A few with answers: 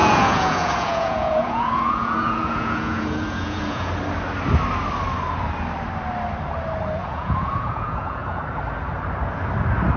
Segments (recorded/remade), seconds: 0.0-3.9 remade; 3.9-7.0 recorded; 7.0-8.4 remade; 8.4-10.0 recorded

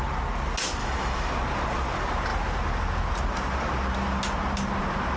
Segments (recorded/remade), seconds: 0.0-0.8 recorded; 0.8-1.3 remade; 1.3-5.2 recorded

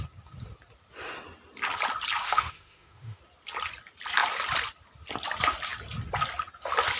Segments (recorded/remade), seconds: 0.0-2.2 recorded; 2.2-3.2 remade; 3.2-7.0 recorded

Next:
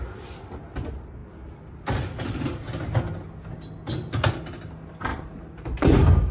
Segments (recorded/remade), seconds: 0.0-5.1 recorded; 5.1-6.3 remade

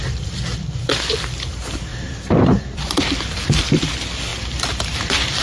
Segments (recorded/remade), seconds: 0.0-0.9 remade; 0.9-1.9 recorded; 1.9-3.6 remade; 3.6-4.3 recorded; 4.3-5.4 remade